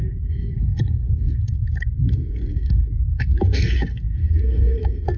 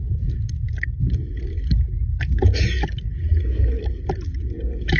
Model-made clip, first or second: first